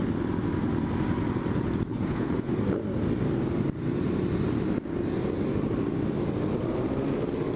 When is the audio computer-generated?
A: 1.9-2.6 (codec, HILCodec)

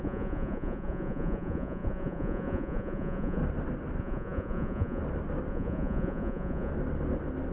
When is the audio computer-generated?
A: 0.0-3.4 (vocoder, Vocos); 4.0-5.0; 5.5-6.7

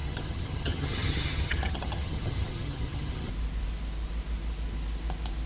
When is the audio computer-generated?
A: 0.0-3.3 (vocoder, HiFi-GAN)

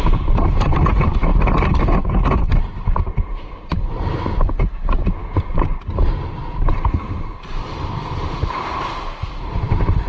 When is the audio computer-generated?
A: 0.0-1.3 (vocoder, BigVGAN v2); 2.4-10.1

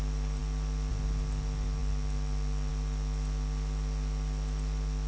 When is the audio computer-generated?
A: none

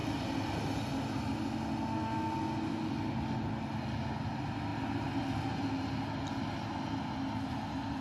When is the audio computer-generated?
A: none